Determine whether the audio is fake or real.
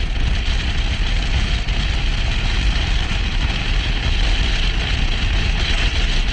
real